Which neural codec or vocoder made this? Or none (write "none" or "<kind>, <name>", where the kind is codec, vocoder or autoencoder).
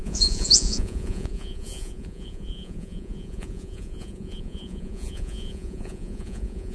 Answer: vocoder, Vocos